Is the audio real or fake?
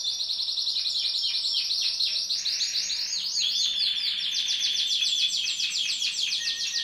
real